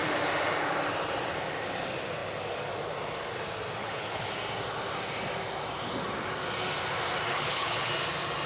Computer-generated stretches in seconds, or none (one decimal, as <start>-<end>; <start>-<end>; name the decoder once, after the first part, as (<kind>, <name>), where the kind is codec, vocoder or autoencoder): 3.8-4.3 (codec, HILCodec); 7.3-7.9